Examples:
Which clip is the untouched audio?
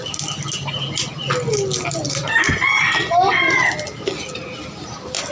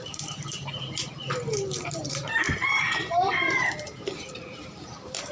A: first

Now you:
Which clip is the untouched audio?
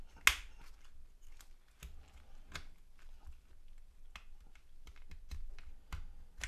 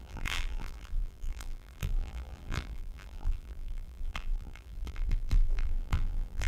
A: first